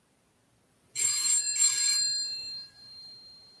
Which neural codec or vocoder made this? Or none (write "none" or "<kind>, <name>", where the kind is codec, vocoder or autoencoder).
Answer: none